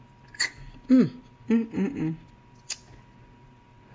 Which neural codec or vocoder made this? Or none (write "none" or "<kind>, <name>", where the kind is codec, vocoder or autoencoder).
none